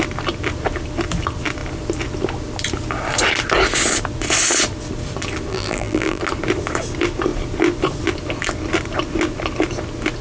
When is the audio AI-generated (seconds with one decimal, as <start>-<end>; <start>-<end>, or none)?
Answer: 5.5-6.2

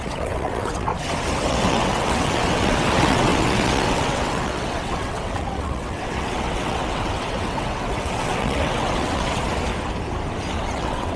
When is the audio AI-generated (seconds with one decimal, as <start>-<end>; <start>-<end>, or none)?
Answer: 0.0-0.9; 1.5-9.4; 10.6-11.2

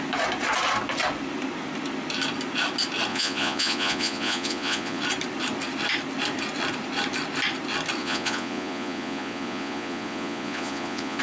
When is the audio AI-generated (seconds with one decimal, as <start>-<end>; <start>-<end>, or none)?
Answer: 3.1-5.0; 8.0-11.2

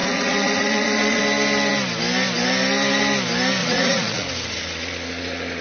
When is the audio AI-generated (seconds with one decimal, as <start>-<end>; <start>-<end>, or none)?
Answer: 0.0-1.2; 3.6-4.3

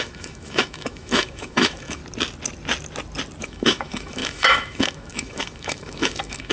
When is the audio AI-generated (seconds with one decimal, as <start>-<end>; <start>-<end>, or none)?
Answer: 0.0-2.0; 3.4-6.5